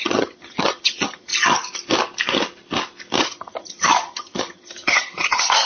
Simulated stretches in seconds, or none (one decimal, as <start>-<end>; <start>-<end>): 0.0-1.3; 3.2-5.7